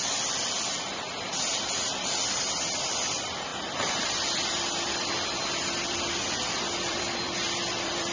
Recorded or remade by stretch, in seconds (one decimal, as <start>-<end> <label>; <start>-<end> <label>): 0.0-8.1 remade